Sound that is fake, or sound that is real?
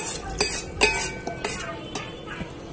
real